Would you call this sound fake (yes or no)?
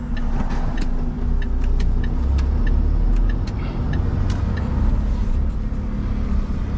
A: no